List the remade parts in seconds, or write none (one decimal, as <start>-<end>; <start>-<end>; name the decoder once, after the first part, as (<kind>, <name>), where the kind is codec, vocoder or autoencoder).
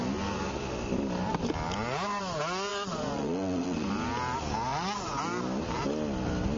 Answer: 2.7-3.9 (vocoder, Vocos); 4.7-5.2